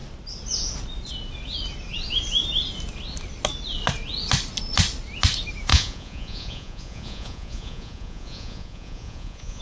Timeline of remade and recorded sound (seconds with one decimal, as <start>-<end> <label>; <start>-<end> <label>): 0.0-5.7 recorded; 5.7-9.6 remade